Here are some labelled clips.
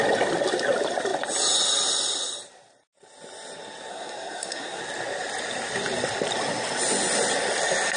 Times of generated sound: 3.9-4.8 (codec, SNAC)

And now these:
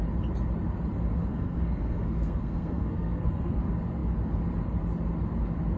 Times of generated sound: 1.2-3.6 (codec, SNAC)